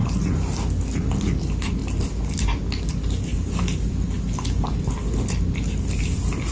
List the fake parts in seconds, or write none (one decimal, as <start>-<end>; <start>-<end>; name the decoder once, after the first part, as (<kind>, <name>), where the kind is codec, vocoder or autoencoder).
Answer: none